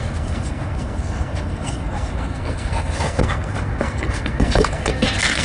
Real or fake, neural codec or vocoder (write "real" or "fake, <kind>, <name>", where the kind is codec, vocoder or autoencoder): fake, codec, SNAC